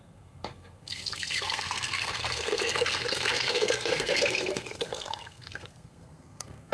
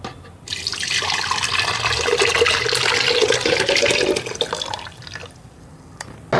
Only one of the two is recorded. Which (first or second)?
second